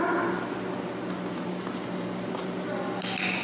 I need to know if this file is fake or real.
real